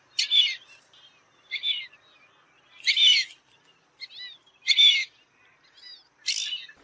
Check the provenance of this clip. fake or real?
real